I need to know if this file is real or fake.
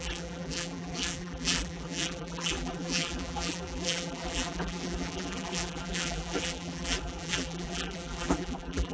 fake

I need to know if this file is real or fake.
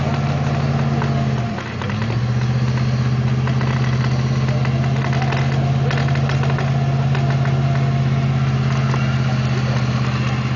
real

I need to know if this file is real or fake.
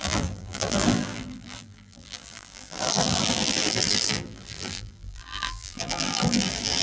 fake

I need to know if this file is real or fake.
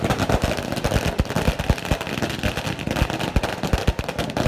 real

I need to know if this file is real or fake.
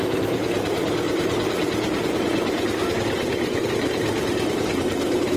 fake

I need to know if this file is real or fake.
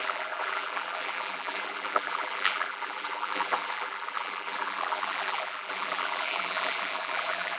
fake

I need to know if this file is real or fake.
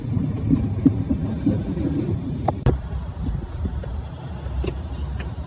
fake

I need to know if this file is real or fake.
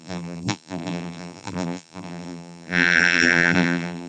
fake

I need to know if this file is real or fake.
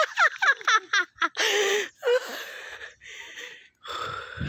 real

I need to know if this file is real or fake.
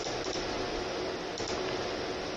real